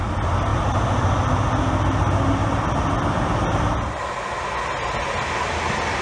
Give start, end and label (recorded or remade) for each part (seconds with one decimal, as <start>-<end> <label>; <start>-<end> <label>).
0.0-6.0 recorded